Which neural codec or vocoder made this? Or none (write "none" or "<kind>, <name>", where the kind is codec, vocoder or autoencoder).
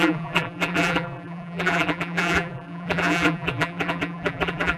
vocoder, BigVGAN v2